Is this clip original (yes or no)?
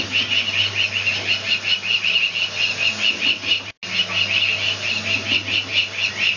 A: yes